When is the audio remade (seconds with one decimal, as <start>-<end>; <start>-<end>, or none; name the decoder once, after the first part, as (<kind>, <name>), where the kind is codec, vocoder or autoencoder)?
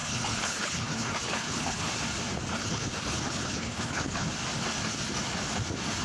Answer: 0.0-1.9 (codec, HILCodec); 2.6-4.3